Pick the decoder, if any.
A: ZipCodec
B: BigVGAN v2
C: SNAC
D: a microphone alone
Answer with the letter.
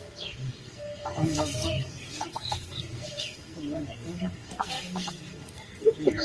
C